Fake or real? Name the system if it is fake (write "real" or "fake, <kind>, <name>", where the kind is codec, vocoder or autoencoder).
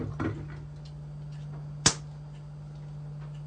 real